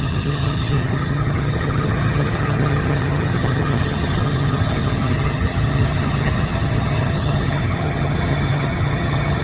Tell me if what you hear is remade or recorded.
remade